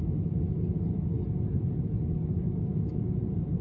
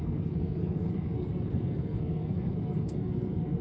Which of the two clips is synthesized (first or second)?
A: second